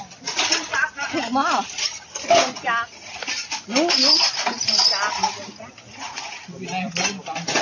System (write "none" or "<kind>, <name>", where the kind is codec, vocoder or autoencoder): none